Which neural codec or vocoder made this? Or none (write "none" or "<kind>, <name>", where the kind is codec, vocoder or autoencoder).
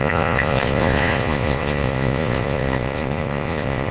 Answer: vocoder, Vocos